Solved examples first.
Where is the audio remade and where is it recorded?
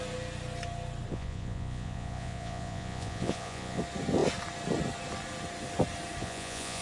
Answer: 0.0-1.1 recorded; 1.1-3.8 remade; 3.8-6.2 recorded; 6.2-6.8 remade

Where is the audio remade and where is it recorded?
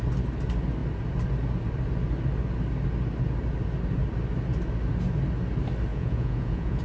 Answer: 0.0-5.9 recorded; 5.9-6.8 remade